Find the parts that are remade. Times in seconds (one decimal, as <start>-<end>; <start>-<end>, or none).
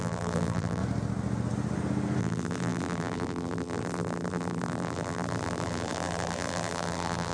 0.0-0.8; 2.2-7.3